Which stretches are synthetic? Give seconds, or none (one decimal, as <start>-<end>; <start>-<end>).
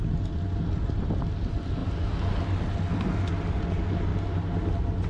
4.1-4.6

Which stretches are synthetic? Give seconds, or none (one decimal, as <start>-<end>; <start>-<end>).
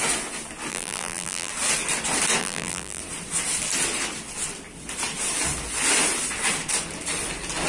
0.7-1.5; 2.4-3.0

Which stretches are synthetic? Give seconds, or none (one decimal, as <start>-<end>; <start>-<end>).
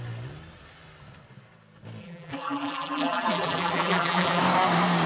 2.0-4.4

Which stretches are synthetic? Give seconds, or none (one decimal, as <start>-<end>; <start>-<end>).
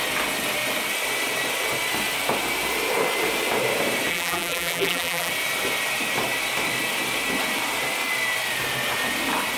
4.1-5.3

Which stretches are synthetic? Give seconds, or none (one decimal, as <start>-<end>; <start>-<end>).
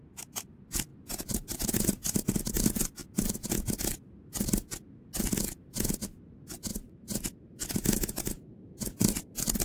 0.9-2.3; 6.7-7.2